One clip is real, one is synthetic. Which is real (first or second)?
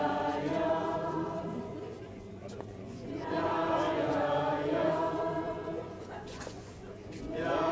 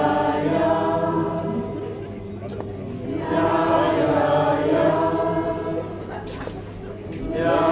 second